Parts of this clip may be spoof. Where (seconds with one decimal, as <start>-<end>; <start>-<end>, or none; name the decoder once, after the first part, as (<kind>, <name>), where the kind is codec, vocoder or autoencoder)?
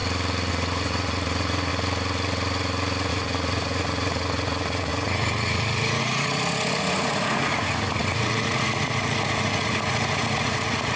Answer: 0.5-1.7 (vocoder, Vocos); 3.1-11.0